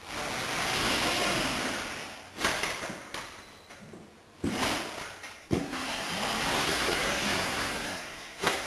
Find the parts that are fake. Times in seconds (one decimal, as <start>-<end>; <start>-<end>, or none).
5.4-6.1; 6.5-8.7